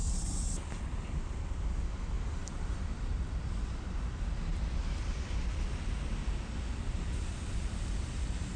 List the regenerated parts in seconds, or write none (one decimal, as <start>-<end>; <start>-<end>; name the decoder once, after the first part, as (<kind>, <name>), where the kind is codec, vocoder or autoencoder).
0.0-8.6 (vocoder, BigVGAN v2)